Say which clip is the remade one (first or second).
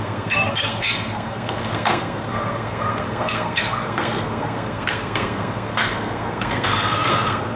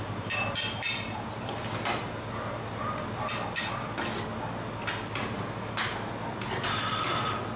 first